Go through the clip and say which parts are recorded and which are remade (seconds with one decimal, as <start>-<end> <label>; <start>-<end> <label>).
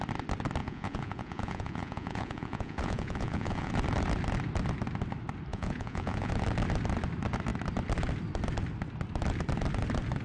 0.0-0.6 recorded; 0.6-3.7 remade; 3.7-5.5 recorded; 5.5-6.3 remade; 6.3-10.2 recorded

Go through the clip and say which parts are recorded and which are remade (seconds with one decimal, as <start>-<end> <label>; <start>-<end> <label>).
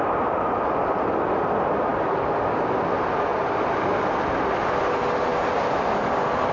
0.0-6.5 recorded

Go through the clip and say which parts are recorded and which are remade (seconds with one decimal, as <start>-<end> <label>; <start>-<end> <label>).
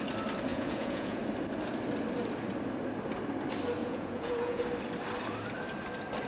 0.0-0.5 recorded; 0.5-1.2 remade; 1.2-3.8 recorded; 3.8-4.6 remade; 4.6-6.3 recorded